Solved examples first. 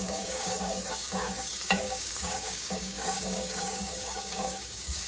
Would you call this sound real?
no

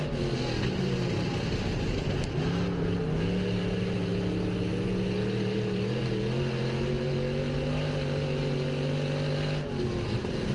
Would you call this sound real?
yes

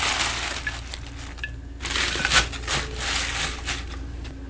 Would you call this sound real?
yes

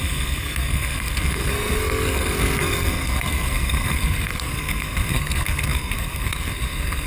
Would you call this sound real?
no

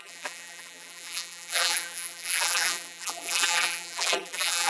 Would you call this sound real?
no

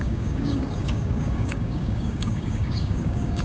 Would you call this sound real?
no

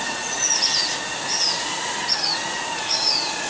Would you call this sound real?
no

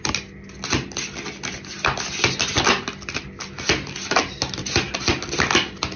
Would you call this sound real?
yes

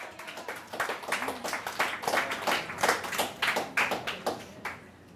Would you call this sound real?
yes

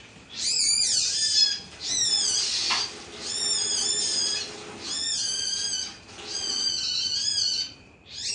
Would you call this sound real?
yes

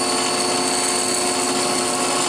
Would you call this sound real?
yes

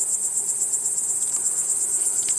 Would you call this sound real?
yes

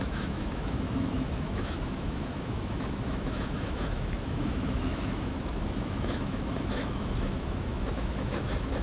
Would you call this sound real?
no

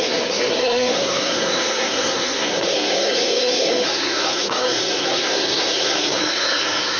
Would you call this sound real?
no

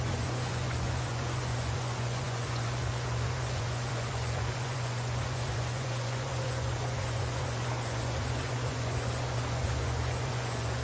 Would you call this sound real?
no